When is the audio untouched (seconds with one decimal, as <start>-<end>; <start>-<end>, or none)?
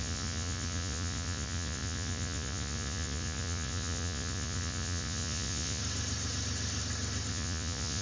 5.8-7.3